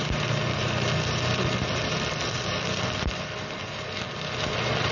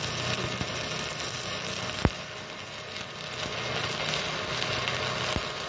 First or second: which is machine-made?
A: first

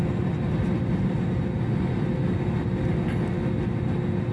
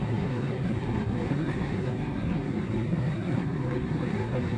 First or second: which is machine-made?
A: second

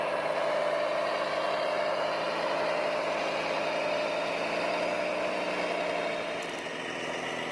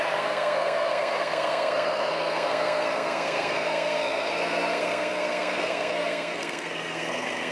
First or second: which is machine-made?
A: second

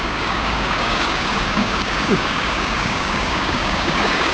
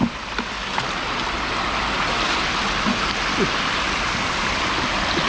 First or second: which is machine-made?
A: first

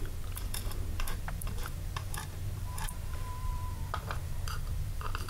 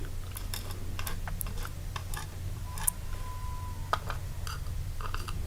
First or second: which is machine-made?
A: first